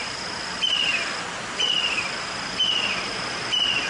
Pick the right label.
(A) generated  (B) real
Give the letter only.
B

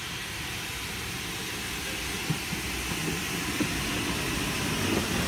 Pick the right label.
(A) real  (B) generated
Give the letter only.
A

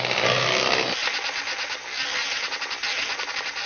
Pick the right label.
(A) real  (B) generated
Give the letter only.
A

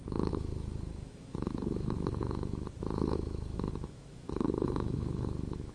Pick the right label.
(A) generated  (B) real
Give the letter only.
A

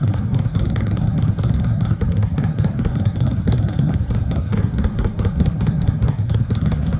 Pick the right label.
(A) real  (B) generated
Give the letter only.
B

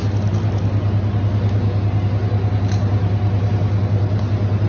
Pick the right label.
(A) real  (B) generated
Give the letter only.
A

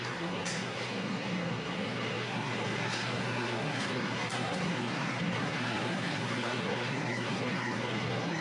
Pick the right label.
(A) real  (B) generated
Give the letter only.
B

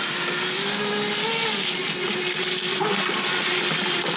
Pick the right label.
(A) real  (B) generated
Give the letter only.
A